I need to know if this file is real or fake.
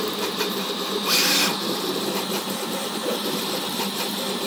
fake